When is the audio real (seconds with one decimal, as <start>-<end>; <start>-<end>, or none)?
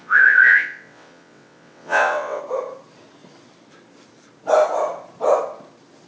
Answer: 2.4-6.1